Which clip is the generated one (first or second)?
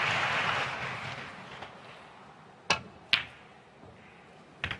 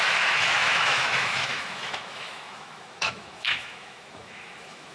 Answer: second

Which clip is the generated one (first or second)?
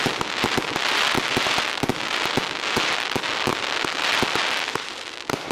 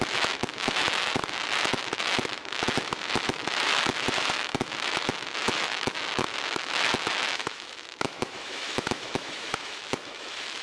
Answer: second